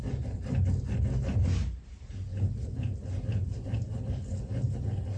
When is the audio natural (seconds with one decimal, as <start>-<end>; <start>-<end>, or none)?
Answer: 0.0-5.2